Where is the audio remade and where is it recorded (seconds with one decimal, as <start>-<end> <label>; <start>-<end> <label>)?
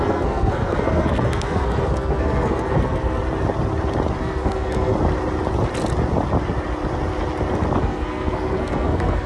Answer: 0.0-3.2 remade; 3.2-4.2 recorded; 4.2-4.9 remade; 4.9-7.8 recorded; 7.8-9.3 remade